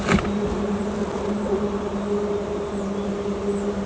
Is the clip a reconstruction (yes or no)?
no